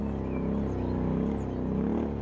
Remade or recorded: recorded